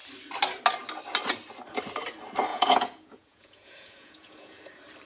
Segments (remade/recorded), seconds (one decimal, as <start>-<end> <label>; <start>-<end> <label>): 0.0-2.5 recorded; 2.5-4.6 remade; 4.6-5.1 recorded